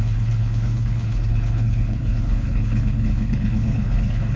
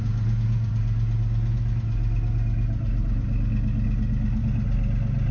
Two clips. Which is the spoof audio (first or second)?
first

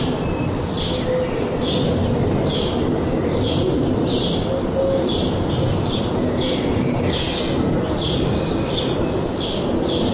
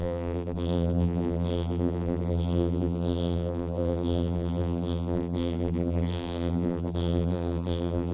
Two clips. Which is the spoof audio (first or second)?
second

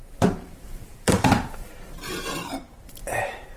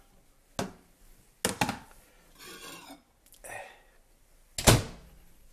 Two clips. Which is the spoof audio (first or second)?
first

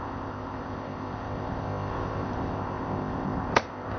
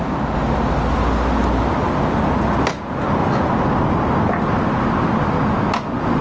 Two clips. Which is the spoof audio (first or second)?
first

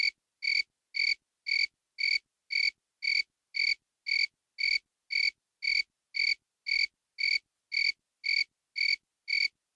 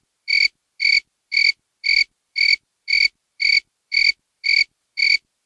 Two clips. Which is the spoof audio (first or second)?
second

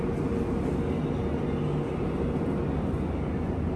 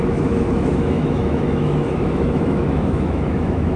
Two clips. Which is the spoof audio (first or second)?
second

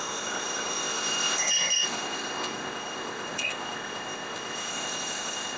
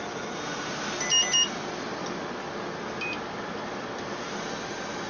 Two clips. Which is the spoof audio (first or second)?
first